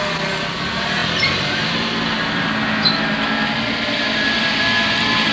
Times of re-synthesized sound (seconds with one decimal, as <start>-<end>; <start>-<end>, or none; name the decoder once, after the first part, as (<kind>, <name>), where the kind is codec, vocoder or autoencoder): none

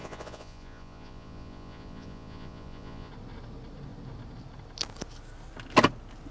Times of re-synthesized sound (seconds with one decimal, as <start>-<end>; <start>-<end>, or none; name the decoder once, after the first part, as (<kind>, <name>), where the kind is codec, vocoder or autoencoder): 0.0-3.1 (vocoder, Vocos)

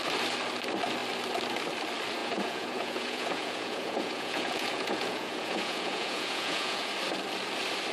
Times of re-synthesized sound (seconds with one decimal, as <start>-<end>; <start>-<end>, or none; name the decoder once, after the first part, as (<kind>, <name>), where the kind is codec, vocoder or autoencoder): 2.2-6.9 (vocoder, Vocos)

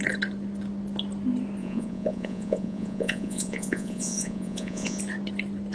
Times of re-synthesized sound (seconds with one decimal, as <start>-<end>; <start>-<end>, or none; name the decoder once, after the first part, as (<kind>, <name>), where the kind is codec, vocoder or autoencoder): 1.6-5.0 (vocoder, Vocos)

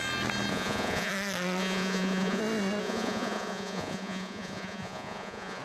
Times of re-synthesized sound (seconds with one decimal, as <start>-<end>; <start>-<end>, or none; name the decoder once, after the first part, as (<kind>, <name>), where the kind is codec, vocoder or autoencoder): 0.5-1.1 (vocoder, Vocos); 1.6-2.4; 2.8-5.6

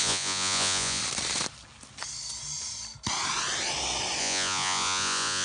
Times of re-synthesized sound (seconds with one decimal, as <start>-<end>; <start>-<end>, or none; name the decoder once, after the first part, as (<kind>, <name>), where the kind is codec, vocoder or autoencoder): 0.0-1.0 (vocoder, Vocos); 4.2-5.4

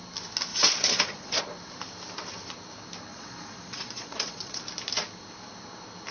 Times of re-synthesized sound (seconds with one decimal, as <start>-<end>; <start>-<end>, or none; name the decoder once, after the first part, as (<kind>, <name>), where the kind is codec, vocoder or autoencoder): 0.5-1.4 (vocoder, Vocos); 3.1-4.6

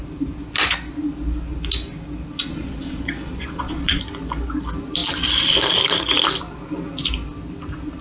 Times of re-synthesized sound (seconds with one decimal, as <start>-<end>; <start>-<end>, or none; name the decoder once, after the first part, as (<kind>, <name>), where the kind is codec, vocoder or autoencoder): 2.5-4.0 (vocoder, Vocos)